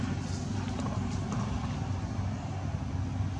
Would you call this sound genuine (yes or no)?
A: yes